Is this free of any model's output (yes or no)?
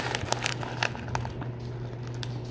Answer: yes